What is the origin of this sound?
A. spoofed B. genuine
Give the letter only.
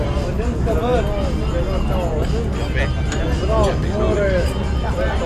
B